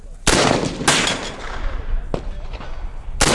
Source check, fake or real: real